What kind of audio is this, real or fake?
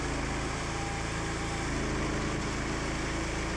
real